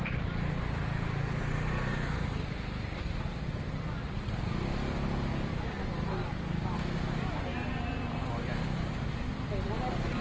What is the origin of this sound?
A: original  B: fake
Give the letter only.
A